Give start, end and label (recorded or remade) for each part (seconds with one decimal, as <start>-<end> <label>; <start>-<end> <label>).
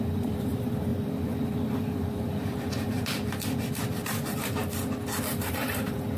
0.0-4.6 remade; 4.6-5.5 recorded; 5.5-6.2 remade